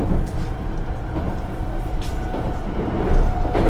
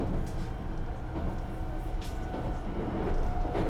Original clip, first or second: second